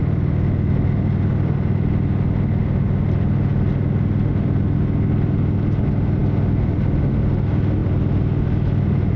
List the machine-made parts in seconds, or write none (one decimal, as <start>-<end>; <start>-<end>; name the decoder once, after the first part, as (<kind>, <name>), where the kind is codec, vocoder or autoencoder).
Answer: none